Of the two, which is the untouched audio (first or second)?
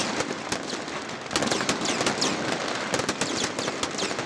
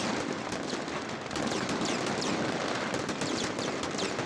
first